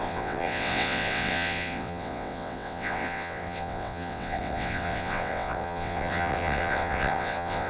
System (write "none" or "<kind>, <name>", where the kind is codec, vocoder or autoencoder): vocoder, WaveNeXt